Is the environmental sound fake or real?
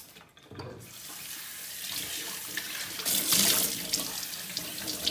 real